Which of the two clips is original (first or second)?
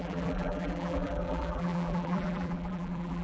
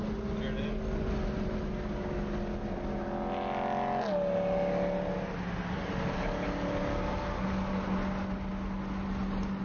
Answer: second